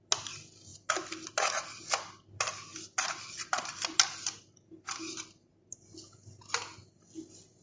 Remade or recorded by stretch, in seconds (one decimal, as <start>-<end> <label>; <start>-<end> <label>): 0.0-7.6 recorded